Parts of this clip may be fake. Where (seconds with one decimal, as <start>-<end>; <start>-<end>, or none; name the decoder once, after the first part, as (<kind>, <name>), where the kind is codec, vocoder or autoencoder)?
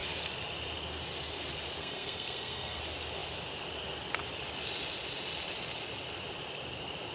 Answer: 1.8-2.8 (codec, SNAC)